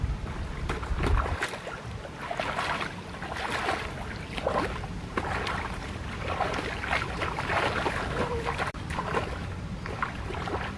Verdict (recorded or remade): recorded